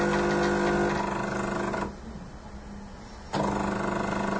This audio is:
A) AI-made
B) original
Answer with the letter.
B